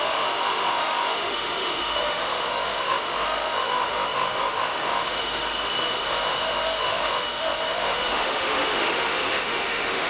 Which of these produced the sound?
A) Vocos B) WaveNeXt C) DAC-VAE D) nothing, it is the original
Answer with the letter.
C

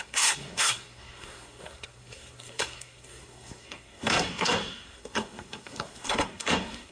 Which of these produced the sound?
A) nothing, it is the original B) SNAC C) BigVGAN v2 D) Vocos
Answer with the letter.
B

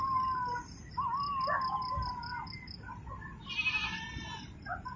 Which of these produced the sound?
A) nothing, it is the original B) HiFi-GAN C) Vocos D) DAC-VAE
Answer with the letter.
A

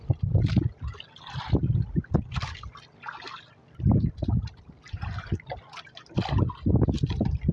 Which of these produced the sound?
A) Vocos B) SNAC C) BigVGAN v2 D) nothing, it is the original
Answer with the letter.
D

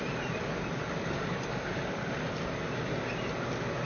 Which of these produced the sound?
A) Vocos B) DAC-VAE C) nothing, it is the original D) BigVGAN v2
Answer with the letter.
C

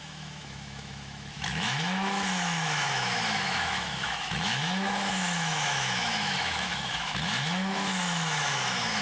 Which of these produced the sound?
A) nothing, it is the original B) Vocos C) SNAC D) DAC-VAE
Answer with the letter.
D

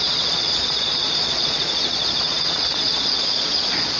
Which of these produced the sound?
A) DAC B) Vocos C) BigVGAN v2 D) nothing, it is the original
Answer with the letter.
B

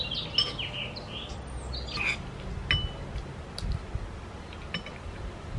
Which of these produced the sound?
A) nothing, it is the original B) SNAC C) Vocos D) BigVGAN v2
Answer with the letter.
A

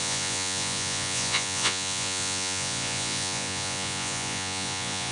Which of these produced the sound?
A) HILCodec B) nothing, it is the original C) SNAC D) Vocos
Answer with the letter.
D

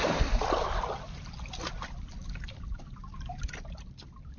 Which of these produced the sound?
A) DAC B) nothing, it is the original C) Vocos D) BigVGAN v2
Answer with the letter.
B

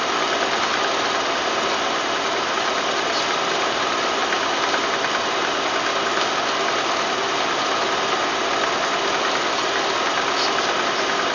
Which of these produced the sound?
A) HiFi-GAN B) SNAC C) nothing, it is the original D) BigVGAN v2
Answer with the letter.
C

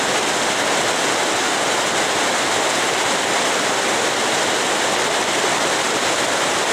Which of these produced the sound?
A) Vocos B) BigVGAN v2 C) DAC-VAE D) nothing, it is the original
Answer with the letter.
D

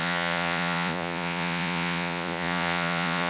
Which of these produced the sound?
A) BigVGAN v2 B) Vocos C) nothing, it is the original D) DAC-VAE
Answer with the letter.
B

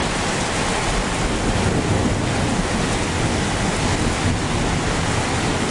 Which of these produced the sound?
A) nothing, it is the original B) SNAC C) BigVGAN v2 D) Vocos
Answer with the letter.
A